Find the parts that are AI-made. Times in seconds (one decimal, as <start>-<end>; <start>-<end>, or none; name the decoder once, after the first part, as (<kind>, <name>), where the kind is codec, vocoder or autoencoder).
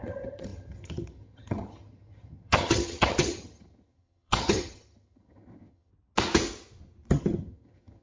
0.0-5.9 (vocoder, HiFi-GAN); 7.1-8.0